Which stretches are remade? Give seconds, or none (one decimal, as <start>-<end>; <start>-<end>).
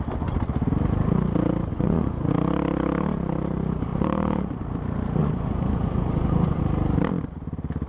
1.7-2.3; 3.9-4.6; 5.2-6.6